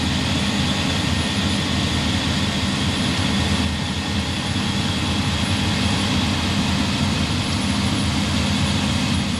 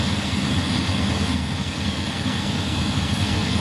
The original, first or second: first